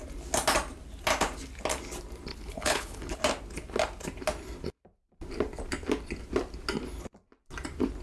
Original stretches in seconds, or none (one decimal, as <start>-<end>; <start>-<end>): 0.0-2.3; 3.2-8.0